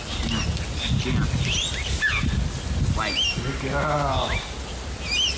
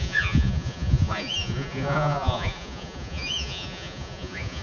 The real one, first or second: first